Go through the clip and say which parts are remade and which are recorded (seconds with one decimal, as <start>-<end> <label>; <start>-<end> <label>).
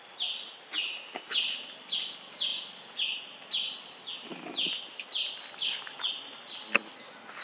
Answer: 0.0-7.4 recorded